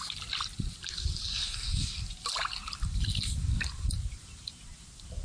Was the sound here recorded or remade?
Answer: recorded